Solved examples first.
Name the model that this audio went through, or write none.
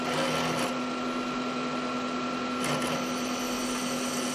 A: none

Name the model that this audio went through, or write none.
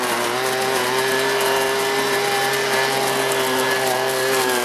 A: none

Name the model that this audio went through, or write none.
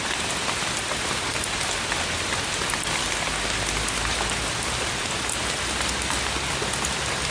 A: none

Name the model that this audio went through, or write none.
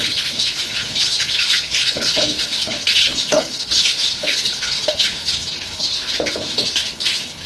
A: codec, HILCodec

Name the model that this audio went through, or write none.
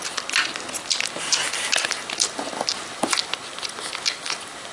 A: none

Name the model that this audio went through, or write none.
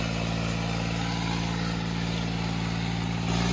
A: none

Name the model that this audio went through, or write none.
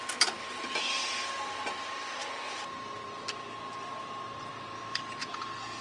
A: vocoder, BigVGAN v2